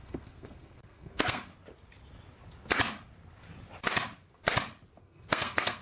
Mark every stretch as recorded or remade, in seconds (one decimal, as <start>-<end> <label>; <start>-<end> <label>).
0.0-1.5 remade; 1.5-5.0 recorded; 5.0-5.8 remade